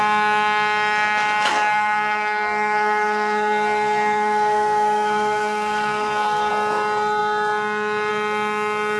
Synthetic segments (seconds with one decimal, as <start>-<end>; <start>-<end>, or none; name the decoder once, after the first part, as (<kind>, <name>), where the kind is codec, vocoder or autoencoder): 1.5-6.5 (codec, SNAC)